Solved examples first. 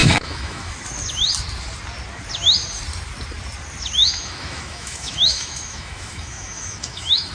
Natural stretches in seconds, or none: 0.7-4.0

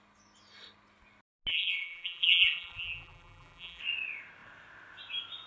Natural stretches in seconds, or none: 0.0-1.5; 3.8-5.5